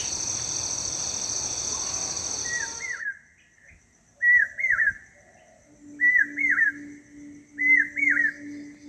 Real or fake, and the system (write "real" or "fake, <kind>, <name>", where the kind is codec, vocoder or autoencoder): real